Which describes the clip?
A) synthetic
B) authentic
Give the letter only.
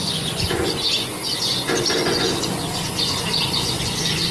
A